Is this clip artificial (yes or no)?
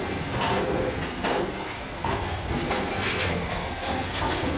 yes